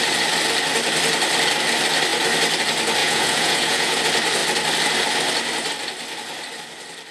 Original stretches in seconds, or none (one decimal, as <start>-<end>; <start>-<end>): 0.0-3.0; 4.0-7.1

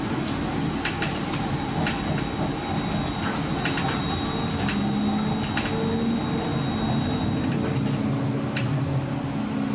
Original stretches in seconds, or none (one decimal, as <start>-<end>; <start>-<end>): 0.0-9.7

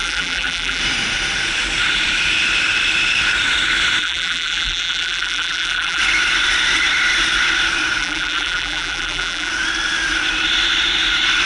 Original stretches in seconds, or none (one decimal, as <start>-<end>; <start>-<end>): 0.8-4.0; 6.0-8.0; 9.5-11.5

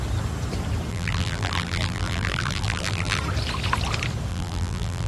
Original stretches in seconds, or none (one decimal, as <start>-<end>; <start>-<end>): 0.0-0.9; 3.2-4.3